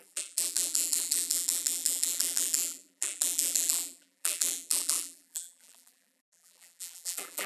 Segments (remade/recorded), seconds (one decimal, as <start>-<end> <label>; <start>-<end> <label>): 0.0-7.5 remade